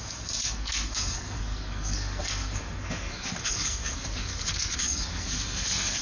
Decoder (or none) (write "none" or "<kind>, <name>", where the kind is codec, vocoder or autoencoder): codec, SNAC